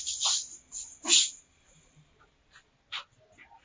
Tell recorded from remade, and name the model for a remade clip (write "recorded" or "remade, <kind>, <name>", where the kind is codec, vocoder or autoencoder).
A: recorded